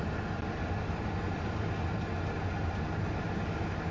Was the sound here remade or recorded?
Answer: recorded